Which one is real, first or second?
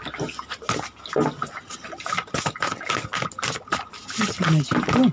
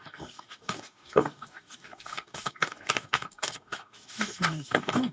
first